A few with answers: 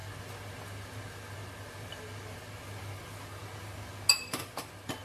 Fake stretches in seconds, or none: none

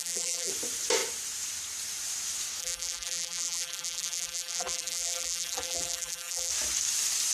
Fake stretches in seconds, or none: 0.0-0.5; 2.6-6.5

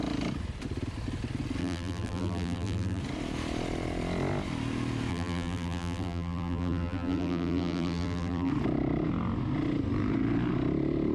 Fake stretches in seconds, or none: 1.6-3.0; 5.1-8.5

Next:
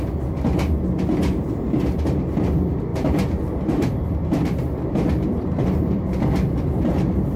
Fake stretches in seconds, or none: 2.9-7.4

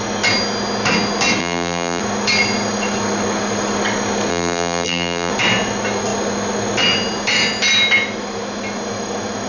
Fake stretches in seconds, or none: 1.4-2.0; 4.3-5.3

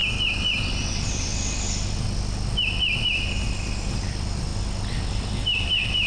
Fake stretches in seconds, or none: 0.9-1.3; 3.1-4.5; 5.1-6.1

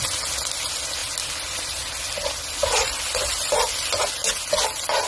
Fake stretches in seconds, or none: 1.0-4.1

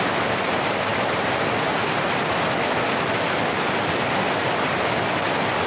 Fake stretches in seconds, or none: none